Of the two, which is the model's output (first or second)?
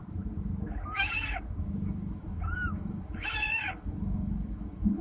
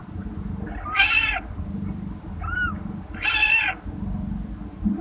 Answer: first